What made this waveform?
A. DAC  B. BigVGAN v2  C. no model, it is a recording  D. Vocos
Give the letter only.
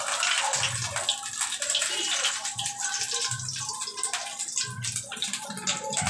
C